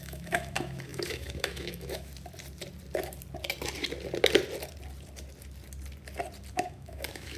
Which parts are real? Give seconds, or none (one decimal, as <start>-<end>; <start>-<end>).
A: 2.1-6.5